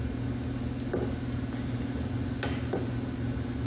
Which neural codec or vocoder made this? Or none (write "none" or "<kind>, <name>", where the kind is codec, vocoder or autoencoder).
none